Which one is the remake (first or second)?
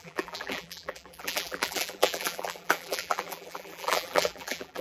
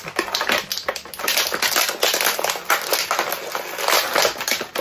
first